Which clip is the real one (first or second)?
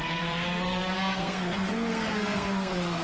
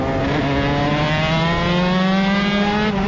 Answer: second